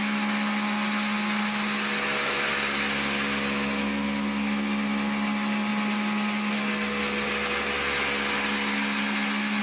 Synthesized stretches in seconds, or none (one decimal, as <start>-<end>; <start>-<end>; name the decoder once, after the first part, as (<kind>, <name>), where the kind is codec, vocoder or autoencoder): none